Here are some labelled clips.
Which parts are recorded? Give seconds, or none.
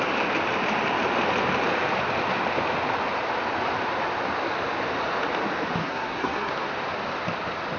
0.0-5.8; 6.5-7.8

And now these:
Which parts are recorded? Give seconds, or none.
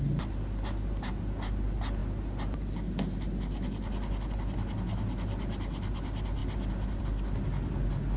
0.0-8.2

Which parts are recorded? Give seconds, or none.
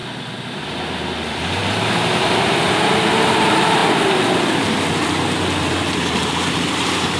0.0-0.7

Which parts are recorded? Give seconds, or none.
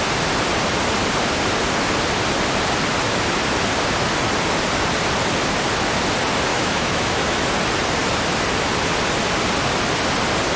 0.0-6.5; 7.4-10.6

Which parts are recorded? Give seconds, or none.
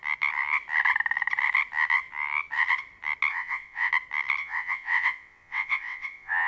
0.0-3.3; 3.9-4.4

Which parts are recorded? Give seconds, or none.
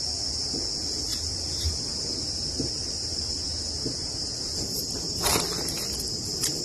0.0-1.1; 5.0-6.6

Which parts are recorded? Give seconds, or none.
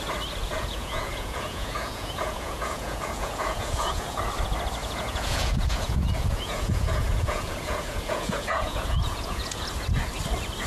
0.0-0.4; 4.2-4.8; 9.6-10.7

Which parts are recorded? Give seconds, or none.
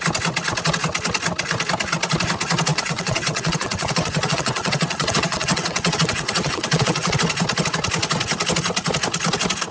0.0-2.7; 7.1-9.7